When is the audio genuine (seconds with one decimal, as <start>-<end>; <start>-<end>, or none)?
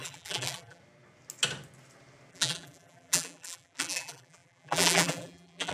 0.8-2.3